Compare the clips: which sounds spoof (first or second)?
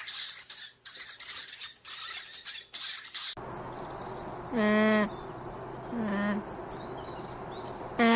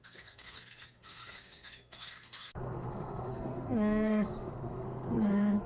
second